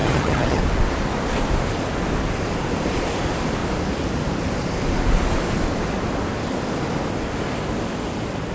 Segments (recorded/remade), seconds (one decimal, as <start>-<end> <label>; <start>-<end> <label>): 0.0-0.6 remade; 0.6-8.5 recorded